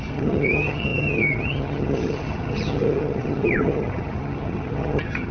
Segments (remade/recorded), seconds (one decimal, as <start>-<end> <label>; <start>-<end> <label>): 0.0-5.3 remade